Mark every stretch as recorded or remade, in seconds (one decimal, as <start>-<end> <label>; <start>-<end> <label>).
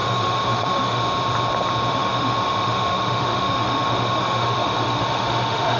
0.0-1.0 remade; 1.0-1.9 recorded; 1.9-5.8 remade